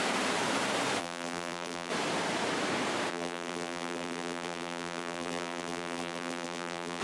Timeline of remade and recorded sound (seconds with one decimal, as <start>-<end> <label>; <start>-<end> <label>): 0.0-1.0 recorded; 1.0-1.9 remade; 1.9-3.1 recorded; 3.1-7.0 remade